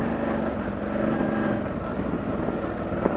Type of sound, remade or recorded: recorded